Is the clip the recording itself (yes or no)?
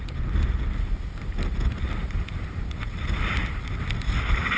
yes